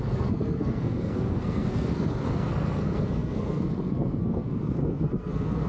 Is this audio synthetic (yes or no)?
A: yes